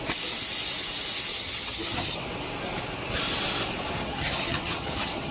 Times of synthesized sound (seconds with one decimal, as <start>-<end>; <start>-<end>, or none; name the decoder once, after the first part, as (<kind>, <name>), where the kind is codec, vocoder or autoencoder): 1.3-2.2 (vocoder, HiFi-GAN); 4.0-5.3